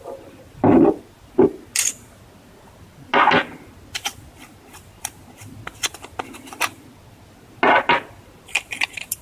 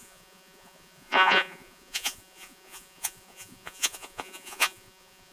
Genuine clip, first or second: first